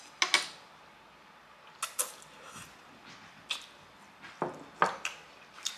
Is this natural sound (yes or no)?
yes